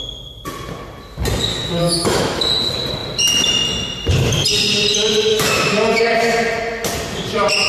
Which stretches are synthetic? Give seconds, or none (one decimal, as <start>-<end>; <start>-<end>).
1.5-2.5; 5.3-6.0